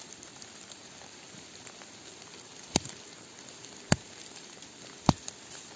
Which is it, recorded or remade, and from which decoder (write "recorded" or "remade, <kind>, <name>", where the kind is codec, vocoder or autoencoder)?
recorded